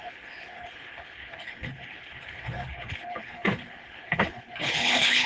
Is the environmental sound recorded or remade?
remade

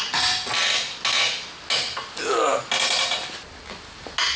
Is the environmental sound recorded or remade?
recorded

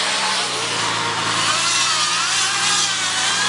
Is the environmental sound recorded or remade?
recorded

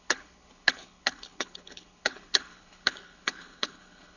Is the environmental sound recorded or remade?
remade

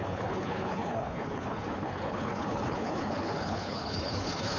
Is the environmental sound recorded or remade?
remade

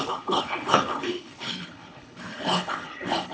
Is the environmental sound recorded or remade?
remade